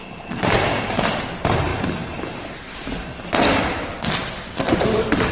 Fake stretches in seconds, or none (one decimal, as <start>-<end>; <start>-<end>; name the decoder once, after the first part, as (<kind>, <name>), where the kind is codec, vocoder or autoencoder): none